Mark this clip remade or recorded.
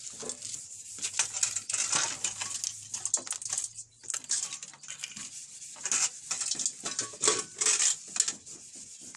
recorded